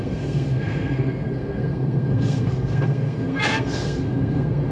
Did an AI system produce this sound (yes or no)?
yes